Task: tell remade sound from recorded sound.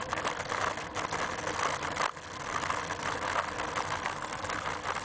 recorded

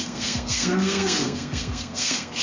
remade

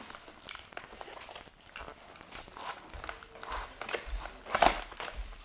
recorded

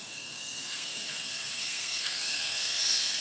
remade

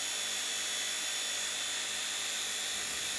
recorded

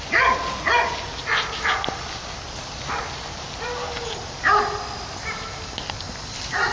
recorded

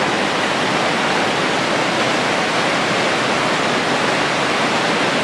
recorded